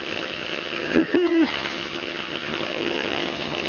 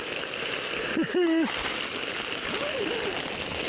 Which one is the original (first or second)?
second